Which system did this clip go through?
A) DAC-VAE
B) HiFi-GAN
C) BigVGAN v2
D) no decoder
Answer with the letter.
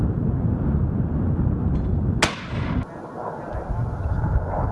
D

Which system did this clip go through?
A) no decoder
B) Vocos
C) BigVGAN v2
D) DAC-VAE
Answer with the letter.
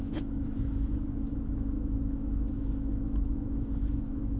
D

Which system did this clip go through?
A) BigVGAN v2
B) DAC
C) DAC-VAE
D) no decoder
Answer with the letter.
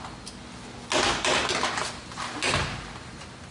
D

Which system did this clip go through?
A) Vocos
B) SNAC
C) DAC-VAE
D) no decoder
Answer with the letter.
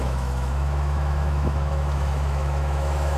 C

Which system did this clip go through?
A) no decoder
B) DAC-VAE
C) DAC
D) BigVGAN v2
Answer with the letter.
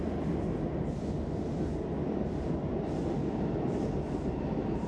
A